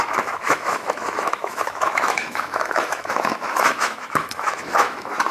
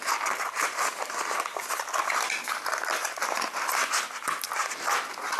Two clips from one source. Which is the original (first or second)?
second